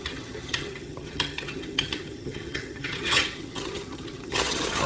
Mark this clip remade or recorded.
remade